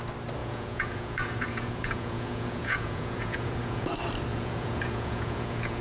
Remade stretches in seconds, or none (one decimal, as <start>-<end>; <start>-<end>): 0.4-3.9; 4.3-5.8